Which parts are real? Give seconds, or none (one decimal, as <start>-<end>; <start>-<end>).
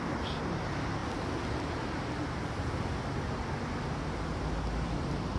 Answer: 0.0-5.4